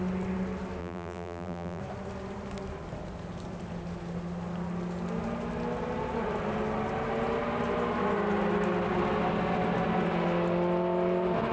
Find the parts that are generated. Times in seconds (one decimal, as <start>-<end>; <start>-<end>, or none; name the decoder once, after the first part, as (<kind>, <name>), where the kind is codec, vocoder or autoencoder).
0.8-1.8 (vocoder, BigVGAN v2)